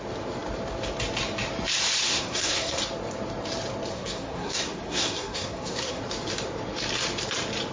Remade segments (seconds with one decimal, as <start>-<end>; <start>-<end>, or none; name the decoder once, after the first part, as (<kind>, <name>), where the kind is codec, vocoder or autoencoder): 2.1-2.8 (codec, SNAC); 3.9-6.0